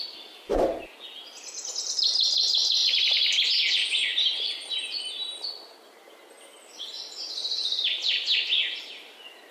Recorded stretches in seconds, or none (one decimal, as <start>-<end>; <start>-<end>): 0.0-9.5